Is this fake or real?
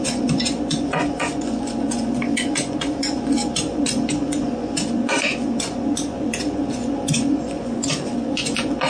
fake